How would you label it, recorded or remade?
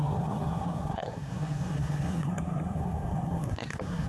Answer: remade